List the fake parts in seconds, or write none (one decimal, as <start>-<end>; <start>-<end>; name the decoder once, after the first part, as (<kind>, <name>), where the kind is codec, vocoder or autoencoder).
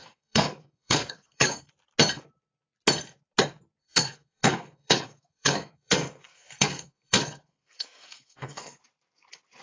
0.0-1.7 (codec, SNAC); 3.8-8.8